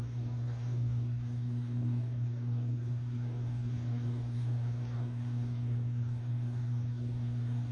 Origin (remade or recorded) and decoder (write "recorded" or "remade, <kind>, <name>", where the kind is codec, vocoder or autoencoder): remade, codec, DAC